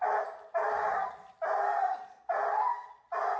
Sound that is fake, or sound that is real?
real